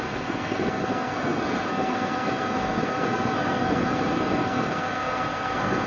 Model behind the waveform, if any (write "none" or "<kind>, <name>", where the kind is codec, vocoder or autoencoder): codec, SNAC